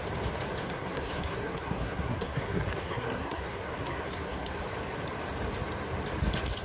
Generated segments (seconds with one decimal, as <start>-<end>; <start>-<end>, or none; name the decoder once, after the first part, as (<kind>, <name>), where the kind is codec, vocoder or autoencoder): 0.6-4.6 (codec, SNAC)